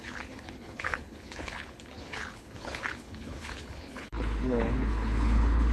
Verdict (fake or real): fake